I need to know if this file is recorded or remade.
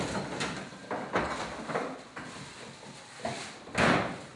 recorded